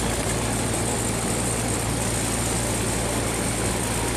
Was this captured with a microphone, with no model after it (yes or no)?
yes